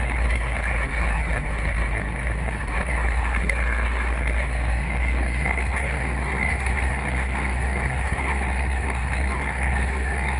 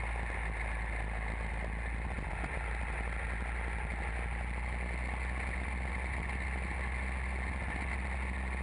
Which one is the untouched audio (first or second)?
second